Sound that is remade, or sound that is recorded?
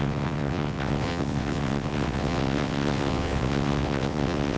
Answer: remade